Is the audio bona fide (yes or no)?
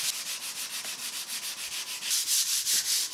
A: yes